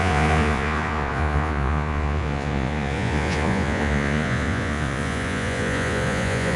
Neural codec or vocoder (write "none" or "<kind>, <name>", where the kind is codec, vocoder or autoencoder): vocoder, Vocos